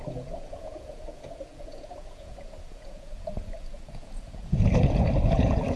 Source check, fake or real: fake